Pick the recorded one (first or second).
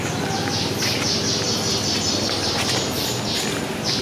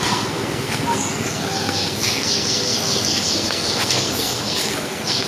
first